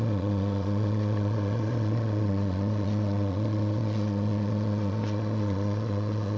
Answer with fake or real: fake